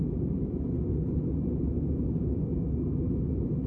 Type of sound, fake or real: real